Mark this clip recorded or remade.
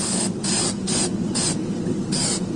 recorded